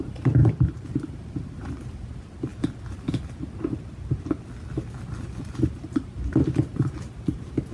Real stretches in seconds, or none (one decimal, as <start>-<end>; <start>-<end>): 2.5-5.5